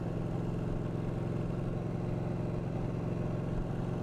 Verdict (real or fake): real